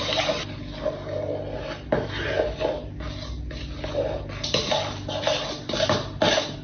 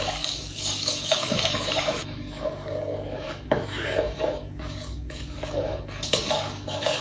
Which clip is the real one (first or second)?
first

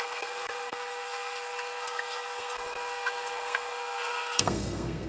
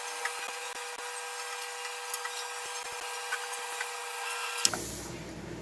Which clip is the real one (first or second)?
second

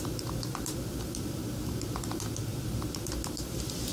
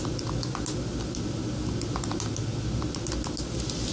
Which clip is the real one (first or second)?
second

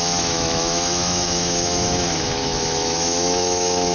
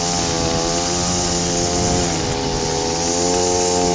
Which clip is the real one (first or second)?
second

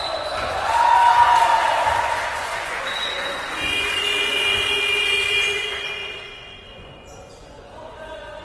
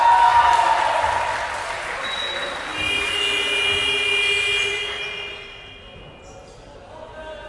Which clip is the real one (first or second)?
second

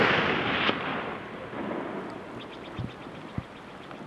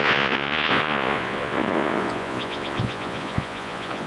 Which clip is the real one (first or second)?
first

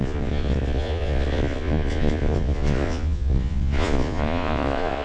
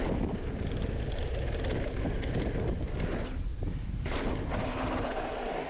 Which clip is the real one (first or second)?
second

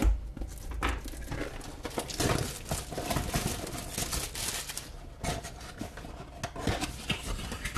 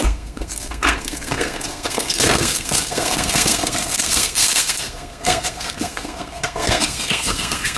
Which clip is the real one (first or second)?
first